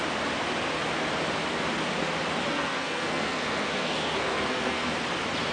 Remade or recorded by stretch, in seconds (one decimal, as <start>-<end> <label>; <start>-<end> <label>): 0.0-2.5 recorded; 2.5-4.9 remade; 4.9-5.5 recorded

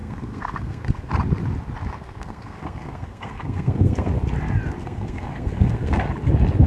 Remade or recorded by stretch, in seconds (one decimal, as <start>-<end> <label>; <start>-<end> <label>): 0.0-1.1 remade; 1.1-1.9 recorded; 1.9-4.1 remade; 4.1-4.8 recorded; 4.8-6.0 remade; 6.0-6.7 recorded

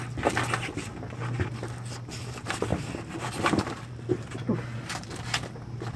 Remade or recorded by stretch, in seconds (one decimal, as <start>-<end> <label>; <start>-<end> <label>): 0.0-6.0 recorded